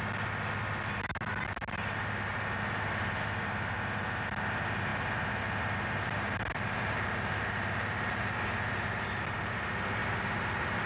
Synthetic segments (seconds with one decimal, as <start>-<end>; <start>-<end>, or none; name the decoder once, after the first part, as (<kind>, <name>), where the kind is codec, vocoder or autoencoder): none